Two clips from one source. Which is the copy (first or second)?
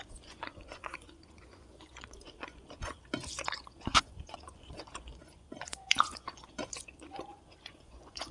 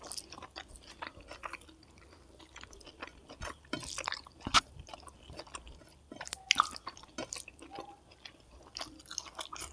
first